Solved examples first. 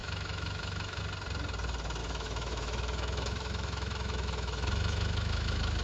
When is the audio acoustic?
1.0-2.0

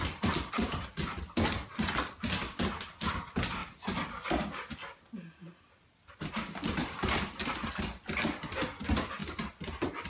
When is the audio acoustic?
0.0-10.1

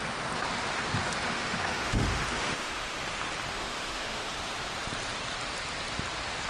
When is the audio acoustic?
0.0-1.3; 3.0-3.5; 4.3-6.5

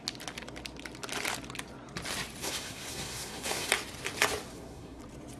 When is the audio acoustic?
0.0-2.4; 3.7-4.5; 5.0-5.4

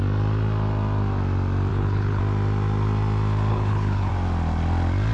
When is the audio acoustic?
0.0-1.7; 2.2-3.5; 4.1-5.1

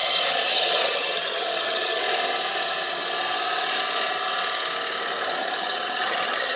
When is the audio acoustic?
2.0-5.4

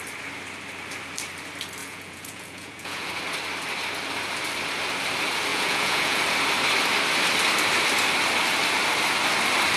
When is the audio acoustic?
0.0-1.8; 3.1-5.5; 6.2-9.8

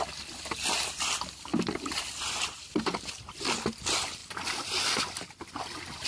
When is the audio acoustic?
0.0-1.5; 2.8-6.1